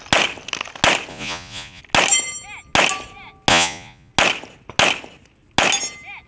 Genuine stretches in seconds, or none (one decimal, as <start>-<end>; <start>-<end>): 0.0-1.1; 1.8-3.5; 4.1-6.3